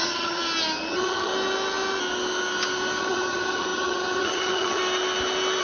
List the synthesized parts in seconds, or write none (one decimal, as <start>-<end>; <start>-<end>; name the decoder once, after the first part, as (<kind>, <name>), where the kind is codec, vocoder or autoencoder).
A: 0.0-0.4 (vocoder, HiFi-GAN); 0.9-1.3; 3.0-4.8